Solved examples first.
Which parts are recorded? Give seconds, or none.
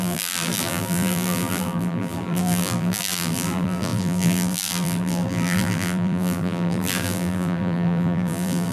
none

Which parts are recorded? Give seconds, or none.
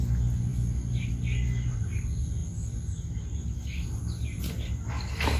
0.0-5.4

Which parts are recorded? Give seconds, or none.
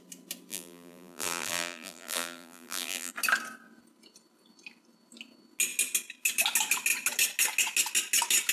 0.0-0.5; 3.1-8.5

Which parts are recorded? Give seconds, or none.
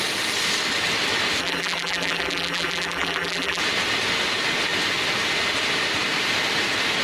0.0-1.4; 3.6-7.0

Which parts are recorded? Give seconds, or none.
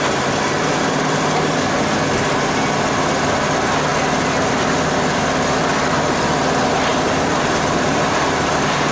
0.0-6.9